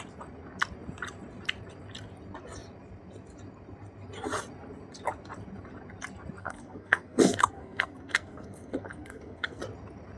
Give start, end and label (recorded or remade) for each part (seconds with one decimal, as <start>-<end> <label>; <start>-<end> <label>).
0.0-6.4 recorded; 6.4-9.6 remade; 9.6-10.2 recorded